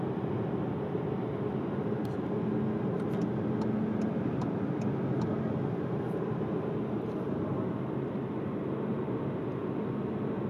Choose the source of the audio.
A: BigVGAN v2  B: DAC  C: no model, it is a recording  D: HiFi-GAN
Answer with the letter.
C